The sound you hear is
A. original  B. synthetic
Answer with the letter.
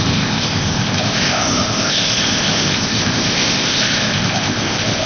B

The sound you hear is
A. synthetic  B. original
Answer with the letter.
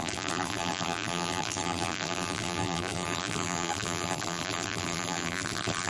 A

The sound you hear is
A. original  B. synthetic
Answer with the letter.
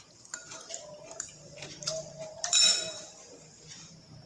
B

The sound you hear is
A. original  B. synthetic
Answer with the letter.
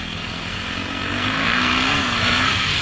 B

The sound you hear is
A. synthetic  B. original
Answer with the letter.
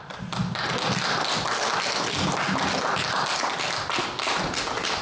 B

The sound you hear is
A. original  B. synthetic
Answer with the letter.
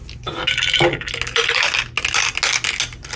A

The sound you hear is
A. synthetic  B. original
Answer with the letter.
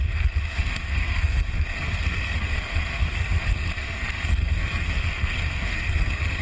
A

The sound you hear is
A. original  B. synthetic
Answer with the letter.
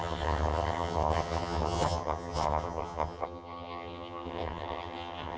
B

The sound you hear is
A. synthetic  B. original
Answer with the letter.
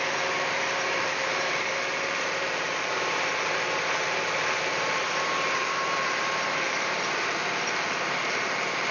A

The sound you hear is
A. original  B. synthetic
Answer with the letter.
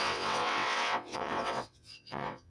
B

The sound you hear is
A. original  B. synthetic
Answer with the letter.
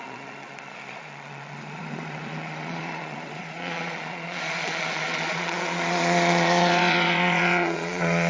B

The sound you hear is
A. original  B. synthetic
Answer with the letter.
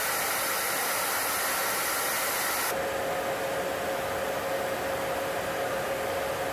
A